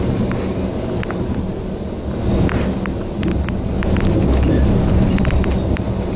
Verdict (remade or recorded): recorded